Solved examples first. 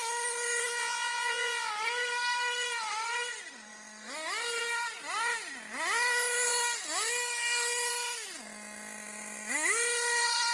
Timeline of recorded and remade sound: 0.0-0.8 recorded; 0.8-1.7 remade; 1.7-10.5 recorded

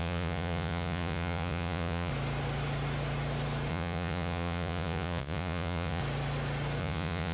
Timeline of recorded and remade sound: 0.0-2.1 remade; 2.1-3.7 recorded; 3.7-6.0 remade; 6.0-6.8 recorded; 6.8-7.3 remade

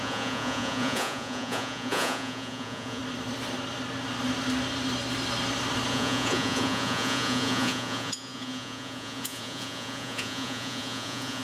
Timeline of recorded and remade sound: 0.0-3.0 remade; 3.0-5.9 recorded; 5.9-11.4 remade